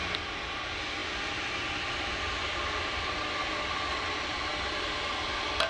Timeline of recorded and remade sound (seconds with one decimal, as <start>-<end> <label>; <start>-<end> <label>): 0.0-5.7 recorded